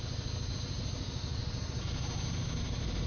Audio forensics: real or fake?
real